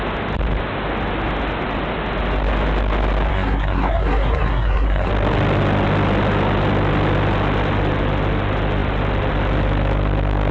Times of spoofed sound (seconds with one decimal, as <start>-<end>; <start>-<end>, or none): 3.3-5.1